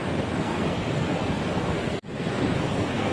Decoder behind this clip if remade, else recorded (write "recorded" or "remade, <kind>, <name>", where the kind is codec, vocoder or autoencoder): remade, codec, SNAC